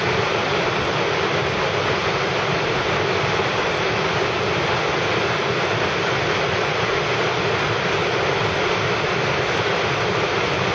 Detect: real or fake real